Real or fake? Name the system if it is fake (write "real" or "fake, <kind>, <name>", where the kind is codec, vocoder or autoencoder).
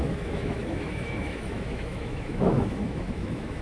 fake, autoencoder, DAC-VAE